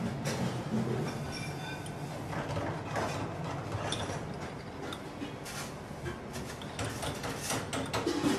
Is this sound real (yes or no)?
yes